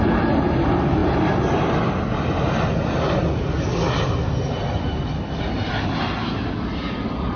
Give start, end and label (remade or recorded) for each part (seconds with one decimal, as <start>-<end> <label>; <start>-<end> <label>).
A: 0.0-7.4 recorded